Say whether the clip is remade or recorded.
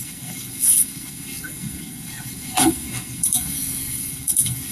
remade